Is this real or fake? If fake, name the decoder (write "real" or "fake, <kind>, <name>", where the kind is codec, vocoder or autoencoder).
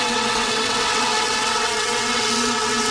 fake, vocoder, WaveNeXt